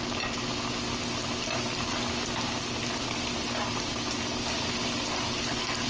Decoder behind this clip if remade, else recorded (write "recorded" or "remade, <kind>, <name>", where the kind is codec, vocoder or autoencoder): recorded